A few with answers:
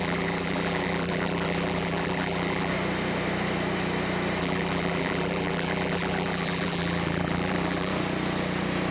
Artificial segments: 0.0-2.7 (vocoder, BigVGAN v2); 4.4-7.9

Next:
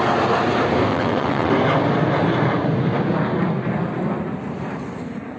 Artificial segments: 0.9-1.5 (vocoder, WaveNeXt)

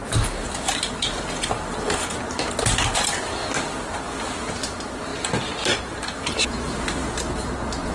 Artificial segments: none

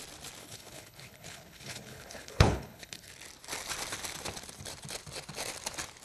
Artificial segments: 0.4-3.1 (codec, HILCodec)

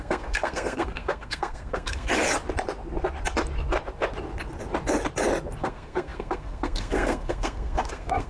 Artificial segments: 0.0-2.1 (codec, SNAC); 5.6-8.3

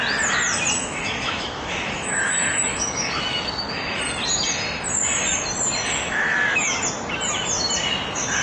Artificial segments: 0.8-4.0 (autoencoder, DAC-VAE); 6.0-6.8

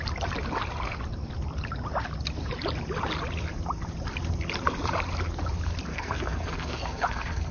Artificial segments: 5.9-7.5 (codec, SNAC)

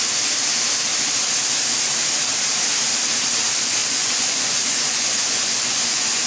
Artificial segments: 3.8-6.3 (vocoder, Vocos)